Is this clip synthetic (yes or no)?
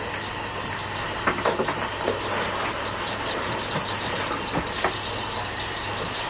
no